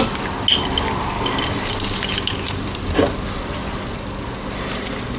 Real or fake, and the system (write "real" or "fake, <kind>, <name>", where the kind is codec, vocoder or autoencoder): real